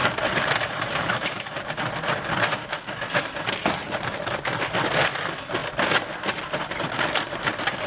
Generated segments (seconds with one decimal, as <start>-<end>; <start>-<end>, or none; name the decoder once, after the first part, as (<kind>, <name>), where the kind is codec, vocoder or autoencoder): 0.0-2.3 (vocoder, BigVGAN v2); 3.8-4.6